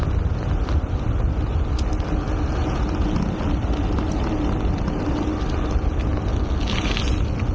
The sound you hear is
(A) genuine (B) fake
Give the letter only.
A